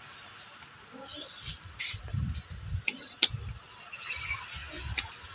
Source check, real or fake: real